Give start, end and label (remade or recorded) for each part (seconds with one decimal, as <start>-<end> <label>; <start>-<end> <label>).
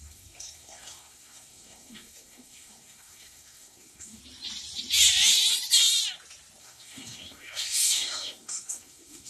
0.0-4.2 remade; 4.2-6.6 recorded; 6.6-9.3 remade